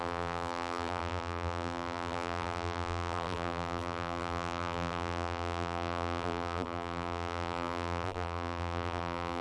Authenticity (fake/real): fake